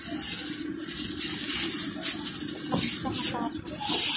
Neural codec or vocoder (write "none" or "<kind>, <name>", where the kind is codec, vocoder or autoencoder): none